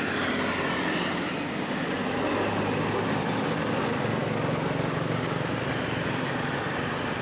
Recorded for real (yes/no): yes